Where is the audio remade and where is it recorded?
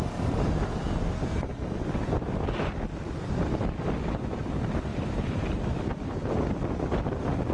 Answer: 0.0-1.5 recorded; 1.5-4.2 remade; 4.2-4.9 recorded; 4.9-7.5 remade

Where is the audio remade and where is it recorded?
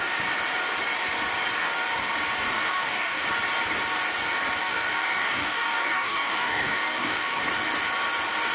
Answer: 0.0-2.4 recorded; 2.4-3.2 remade; 3.2-4.6 recorded; 4.6-7.4 remade; 7.4-8.5 recorded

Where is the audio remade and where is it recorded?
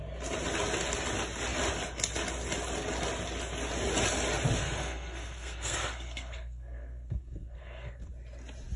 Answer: 0.0-4.6 recorded; 4.6-8.1 remade; 8.1-8.8 recorded